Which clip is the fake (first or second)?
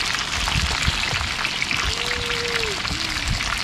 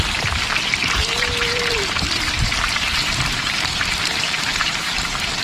second